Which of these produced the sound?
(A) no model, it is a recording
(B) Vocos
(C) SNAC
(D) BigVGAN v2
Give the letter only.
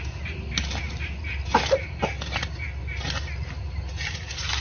A